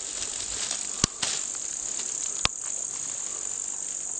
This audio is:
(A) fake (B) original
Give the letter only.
B